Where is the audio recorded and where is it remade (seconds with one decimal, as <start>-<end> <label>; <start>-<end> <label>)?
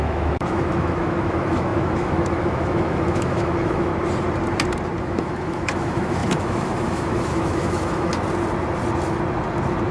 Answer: 0.0-3.9 remade; 3.9-5.0 recorded; 5.0-8.1 remade; 8.1-9.9 recorded